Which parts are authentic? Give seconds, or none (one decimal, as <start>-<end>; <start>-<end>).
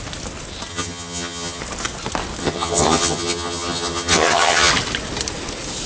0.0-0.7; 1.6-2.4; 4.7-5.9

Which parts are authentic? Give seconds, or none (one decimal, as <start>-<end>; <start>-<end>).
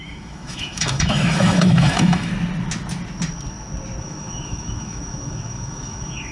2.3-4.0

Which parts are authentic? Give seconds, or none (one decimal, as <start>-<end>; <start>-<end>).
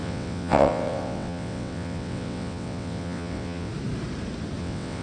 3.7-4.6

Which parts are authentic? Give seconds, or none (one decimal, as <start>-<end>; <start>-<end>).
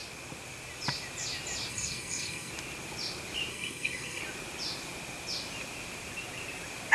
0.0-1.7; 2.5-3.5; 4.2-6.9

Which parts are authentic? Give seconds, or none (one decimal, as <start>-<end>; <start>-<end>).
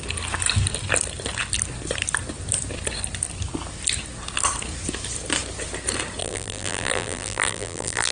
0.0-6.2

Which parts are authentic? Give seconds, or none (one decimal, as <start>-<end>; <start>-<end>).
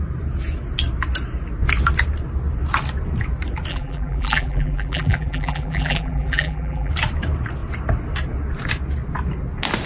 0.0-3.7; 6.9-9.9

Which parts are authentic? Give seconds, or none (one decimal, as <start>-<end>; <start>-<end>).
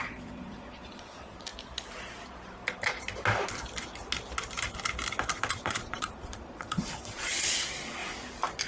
1.5-5.5; 8.0-8.7